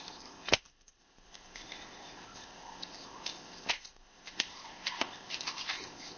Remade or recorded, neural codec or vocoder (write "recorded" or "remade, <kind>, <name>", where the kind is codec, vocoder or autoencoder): remade, codec, ZipCodec